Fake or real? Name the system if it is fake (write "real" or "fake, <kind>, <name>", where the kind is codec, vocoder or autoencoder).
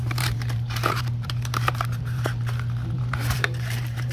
fake, vocoder, BigVGAN v2